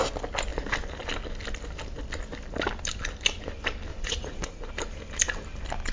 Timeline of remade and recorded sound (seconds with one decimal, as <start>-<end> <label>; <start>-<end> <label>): 0.0-3.9 recorded; 3.9-4.6 remade; 4.6-5.9 recorded